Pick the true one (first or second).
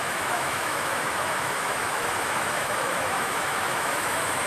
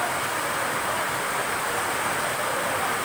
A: second